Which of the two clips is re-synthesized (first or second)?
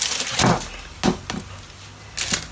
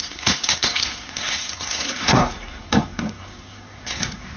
second